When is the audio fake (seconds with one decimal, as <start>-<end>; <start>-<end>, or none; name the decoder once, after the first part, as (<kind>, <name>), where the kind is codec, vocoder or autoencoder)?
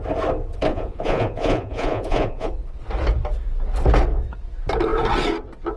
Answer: 0.7-2.5 (vocoder, Vocos)